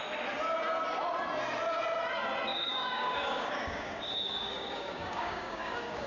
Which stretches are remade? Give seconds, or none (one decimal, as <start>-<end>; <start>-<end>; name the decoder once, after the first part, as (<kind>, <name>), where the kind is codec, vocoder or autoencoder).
2.5-6.1 (codec, DAC)